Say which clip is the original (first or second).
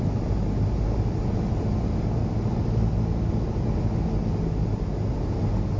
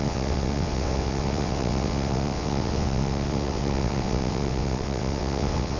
first